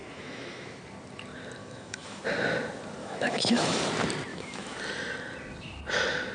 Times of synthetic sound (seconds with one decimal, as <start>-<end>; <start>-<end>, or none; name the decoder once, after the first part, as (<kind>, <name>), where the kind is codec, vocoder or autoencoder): 0.0-0.8 (autoencoder, DAC-VAE); 1.6-2.2; 3.0-3.8; 4.3-4.8